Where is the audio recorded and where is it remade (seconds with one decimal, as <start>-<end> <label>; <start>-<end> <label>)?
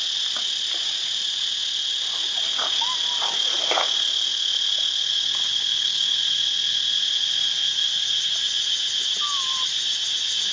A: 0.0-5.5 recorded; 5.5-6.2 remade; 6.2-10.5 recorded